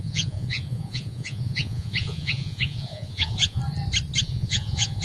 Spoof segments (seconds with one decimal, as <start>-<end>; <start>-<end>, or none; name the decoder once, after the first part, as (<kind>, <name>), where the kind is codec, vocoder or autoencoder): 0.0-3.6 (vocoder, Vocos); 4.2-5.0